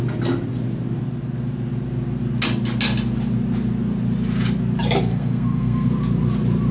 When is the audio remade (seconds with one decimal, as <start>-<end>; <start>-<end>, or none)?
5.1-5.9